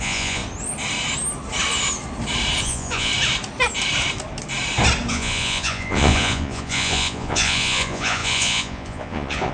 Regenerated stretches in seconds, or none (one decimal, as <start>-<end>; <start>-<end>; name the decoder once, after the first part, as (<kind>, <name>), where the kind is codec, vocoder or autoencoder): 0.0-0.4 (vocoder, Vocos); 2.6-3.1; 5.1-9.5